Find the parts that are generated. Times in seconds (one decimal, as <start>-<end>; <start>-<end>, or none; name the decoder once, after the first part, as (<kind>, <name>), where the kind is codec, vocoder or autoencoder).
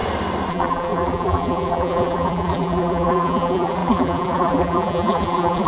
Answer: 0.5-5.7 (vocoder, BigVGAN v2)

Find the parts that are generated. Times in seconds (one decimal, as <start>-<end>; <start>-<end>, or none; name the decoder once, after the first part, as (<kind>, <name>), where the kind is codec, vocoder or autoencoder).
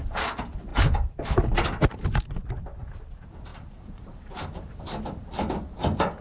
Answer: 3.5-4.4 (vocoder, BigVGAN v2)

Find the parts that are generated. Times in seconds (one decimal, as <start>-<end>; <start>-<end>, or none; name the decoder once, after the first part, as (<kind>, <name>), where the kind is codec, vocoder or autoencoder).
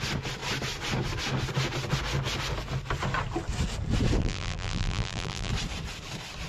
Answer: 4.2-5.5 (vocoder, BigVGAN v2)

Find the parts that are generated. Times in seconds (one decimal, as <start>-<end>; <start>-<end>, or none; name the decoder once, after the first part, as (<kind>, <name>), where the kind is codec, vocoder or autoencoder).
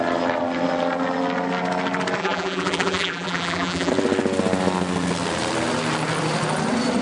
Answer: 2.2-3.9 (vocoder, BigVGAN v2)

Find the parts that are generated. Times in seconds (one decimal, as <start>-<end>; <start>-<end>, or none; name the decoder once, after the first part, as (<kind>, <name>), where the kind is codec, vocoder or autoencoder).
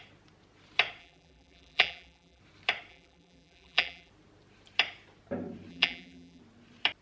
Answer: 1.0-2.4 (vocoder, BigVGAN v2); 2.9-4.1; 5.7-6.4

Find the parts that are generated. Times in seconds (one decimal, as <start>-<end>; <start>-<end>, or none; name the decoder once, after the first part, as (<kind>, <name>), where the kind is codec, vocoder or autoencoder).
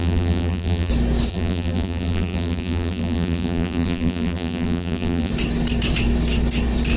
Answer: 0.0-0.9 (vocoder, BigVGAN v2); 1.3-5.3